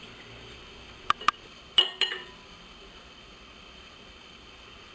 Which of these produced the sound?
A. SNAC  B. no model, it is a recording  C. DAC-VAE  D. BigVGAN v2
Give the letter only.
B